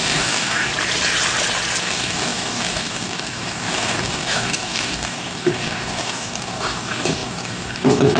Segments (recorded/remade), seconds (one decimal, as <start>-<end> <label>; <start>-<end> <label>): 0.0-0.7 remade; 0.7-1.8 recorded; 1.8-8.2 remade